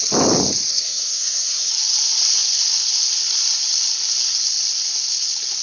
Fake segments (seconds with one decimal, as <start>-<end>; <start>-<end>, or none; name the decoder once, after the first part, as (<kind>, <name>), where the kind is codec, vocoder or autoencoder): 0.7-1.7 (codec, SNAC)